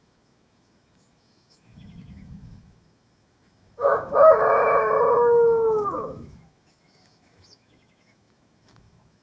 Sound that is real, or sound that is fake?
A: fake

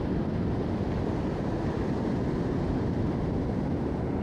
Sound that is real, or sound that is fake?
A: real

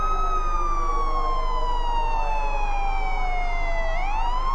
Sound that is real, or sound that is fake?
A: real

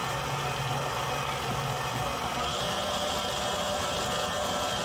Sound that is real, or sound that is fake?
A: real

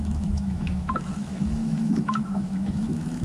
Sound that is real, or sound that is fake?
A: fake